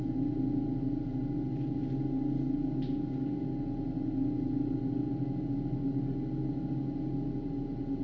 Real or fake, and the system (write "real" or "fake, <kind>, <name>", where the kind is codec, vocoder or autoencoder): real